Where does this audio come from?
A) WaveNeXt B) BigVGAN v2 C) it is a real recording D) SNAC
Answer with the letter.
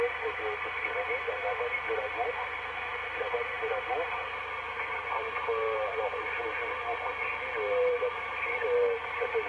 C